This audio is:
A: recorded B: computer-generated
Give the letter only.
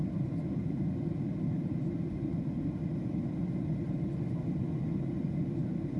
B